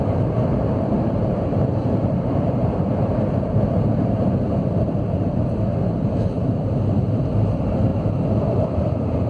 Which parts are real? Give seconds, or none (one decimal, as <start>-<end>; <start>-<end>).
none